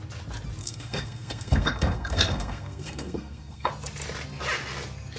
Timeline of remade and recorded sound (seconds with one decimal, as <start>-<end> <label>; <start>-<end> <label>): 0.0-0.6 recorded; 0.6-3.7 remade; 3.7-5.2 recorded